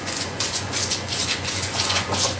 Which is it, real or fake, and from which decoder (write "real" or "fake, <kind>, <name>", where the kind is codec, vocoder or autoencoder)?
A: fake, vocoder, Vocos